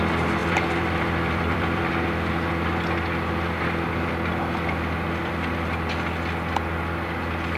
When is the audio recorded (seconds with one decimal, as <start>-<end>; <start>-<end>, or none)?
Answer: 0.0-0.4; 1.9-7.6